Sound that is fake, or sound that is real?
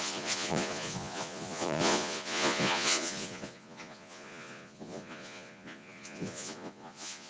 fake